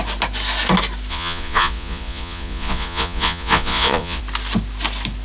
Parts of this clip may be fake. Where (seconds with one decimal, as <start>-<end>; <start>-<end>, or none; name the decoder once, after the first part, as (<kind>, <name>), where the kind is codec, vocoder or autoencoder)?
1.1-4.2 (vocoder, Vocos)